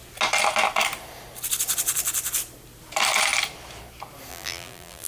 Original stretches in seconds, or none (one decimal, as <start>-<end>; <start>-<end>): 0.0-4.3